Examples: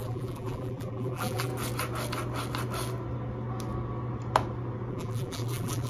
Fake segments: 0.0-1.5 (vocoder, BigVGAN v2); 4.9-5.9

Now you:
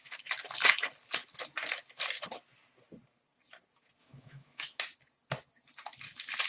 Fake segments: 4.0-4.8 (autoencoder, DAC-VAE)

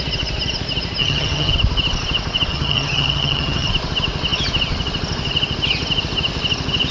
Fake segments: 1.0-1.5 (vocoder, HiFi-GAN); 2.5-3.7

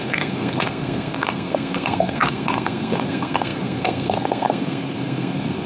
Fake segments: 0.0-5.7 (codec, SNAC)

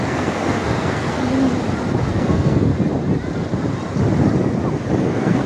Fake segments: 0.0-1.2 (codec, SNAC); 2.1-2.7; 5.0-5.5

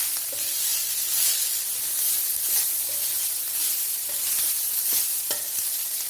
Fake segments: 0.0-6.1 (vocoder, BigVGAN v2)

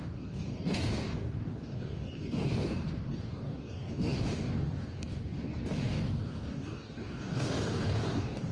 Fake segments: 0.0-8.5 (codec, DAC)